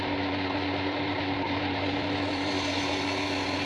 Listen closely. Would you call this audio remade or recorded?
remade